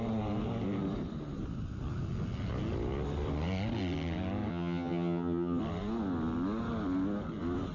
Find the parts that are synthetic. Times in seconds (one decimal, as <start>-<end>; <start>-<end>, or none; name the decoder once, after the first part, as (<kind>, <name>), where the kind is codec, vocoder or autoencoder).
4.5-5.6 (vocoder, HiFi-GAN)